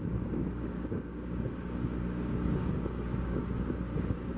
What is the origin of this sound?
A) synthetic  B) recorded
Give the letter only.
A